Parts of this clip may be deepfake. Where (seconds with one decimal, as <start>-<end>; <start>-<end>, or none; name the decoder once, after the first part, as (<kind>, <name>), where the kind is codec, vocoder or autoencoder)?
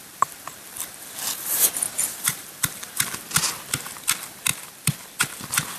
0.0-5.8 (vocoder, BigVGAN v2)